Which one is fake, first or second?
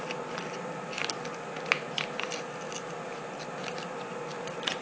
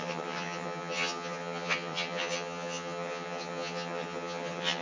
second